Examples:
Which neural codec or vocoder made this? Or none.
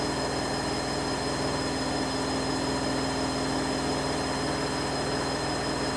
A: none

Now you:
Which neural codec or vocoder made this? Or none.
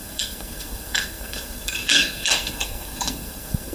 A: codec, SNAC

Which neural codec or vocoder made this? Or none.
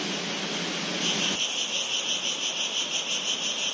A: none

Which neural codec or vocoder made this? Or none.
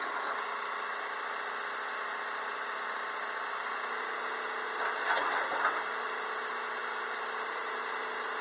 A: none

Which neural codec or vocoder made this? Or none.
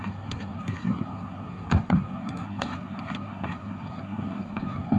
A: codec, SNAC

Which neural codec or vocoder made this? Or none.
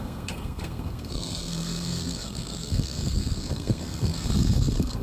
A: codec, SNAC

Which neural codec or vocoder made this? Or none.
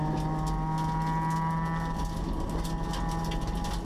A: none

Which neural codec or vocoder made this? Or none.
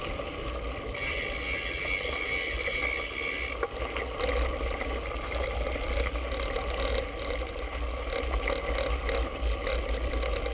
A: none